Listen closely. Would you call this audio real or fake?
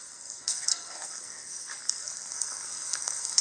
fake